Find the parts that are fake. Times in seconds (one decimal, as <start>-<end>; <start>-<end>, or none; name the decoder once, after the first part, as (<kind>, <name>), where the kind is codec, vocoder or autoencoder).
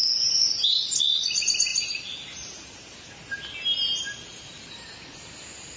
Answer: 1.7-3.1 (vocoder, BigVGAN v2); 4.3-4.9